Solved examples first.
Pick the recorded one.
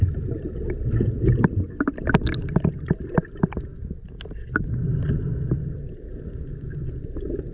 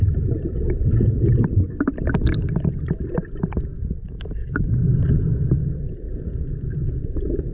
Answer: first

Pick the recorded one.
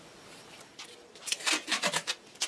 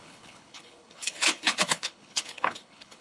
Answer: first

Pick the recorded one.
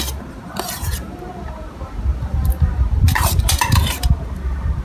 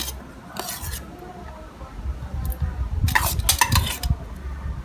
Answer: second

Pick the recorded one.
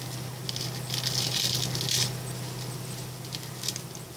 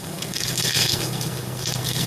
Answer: first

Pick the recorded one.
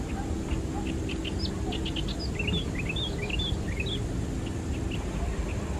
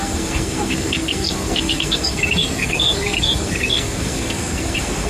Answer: first